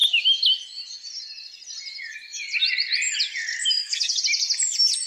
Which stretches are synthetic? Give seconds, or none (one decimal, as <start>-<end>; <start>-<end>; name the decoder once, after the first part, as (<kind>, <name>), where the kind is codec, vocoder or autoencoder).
3.6-4.2 (codec, DAC)